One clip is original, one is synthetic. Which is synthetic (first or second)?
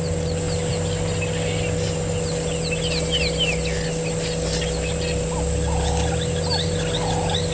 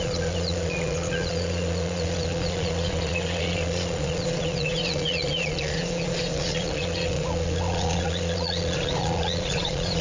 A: second